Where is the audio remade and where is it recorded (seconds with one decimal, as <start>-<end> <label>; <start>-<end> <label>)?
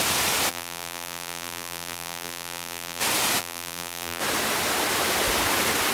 0.0-0.5 recorded; 0.5-3.0 remade; 3.0-3.4 recorded; 3.4-4.2 remade; 4.2-5.9 recorded